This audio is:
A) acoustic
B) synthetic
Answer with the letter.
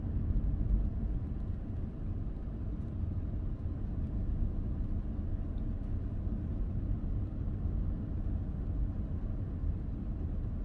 A